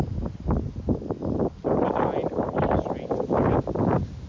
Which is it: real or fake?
real